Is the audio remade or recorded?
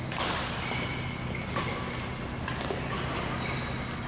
recorded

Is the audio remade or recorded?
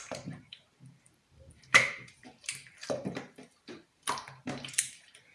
remade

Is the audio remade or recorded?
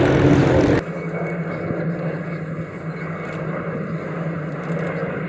recorded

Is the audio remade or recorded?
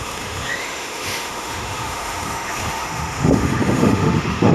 remade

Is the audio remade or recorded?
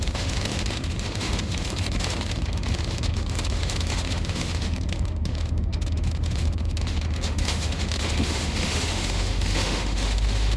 remade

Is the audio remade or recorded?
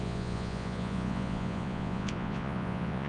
remade